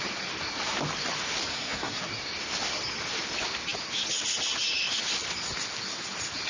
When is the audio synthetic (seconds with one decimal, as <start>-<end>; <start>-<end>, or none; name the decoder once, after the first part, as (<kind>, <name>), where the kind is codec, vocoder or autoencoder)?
1.5-2.0 (codec, SNAC)